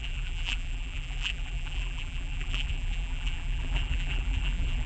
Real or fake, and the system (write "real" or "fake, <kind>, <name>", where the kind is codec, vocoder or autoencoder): fake, vocoder, BigVGAN v2